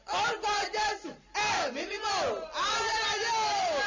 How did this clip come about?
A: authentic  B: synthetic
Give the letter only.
A